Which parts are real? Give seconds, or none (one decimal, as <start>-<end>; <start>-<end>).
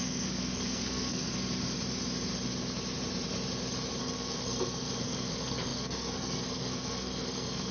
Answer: 1.3-4.0